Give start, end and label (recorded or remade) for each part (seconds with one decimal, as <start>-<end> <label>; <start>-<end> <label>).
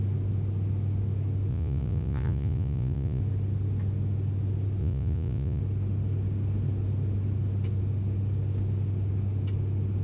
0.0-1.5 recorded; 1.5-3.2 remade; 3.2-4.8 recorded; 4.8-5.6 remade; 5.6-10.0 recorded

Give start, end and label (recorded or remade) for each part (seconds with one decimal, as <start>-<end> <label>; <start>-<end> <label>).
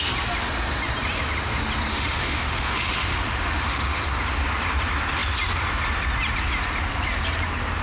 0.0-1.9 recorded; 1.9-4.0 remade; 4.0-7.8 recorded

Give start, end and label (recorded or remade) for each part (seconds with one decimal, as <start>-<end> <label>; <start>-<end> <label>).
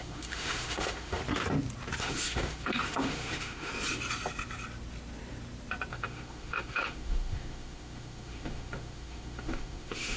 0.0-1.2 remade; 1.2-2.0 recorded; 2.0-3.7 remade; 3.7-5.9 recorded; 5.9-10.2 remade